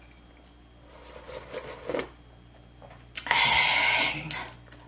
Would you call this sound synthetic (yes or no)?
no